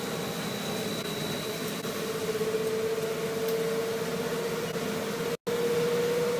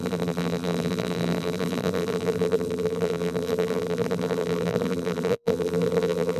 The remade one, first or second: second